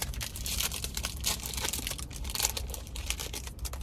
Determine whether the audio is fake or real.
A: fake